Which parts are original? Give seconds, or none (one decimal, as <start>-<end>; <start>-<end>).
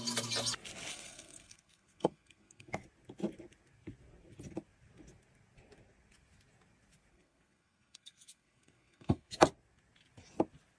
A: 0.0-0.9; 2.7-7.1; 9.3-10.8